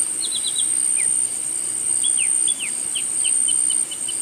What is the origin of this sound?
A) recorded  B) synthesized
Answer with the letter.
A